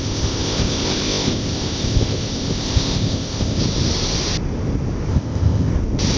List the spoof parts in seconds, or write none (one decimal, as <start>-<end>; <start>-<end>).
0.0-3.6; 5.1-5.7